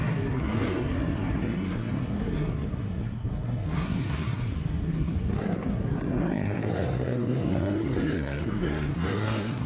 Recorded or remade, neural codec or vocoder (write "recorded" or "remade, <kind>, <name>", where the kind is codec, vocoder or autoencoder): remade, codec, SNAC